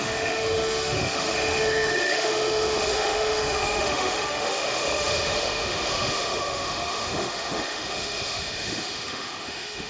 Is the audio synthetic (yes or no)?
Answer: yes